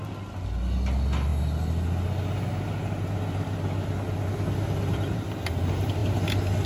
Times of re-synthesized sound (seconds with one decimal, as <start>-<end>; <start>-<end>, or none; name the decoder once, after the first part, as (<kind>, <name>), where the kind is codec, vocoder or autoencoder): none